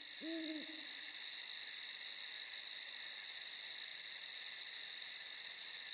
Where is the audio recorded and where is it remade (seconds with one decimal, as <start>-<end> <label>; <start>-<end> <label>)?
0.0-5.9 recorded